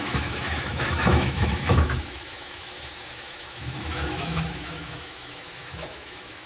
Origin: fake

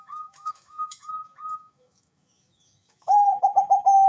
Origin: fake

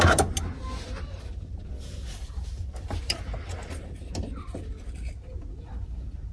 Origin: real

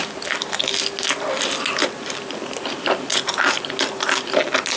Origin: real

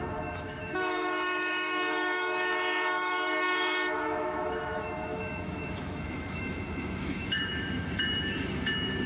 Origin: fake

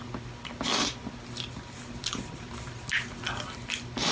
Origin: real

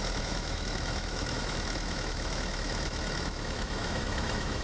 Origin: fake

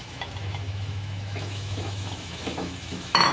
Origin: fake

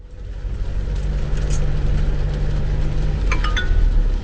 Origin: real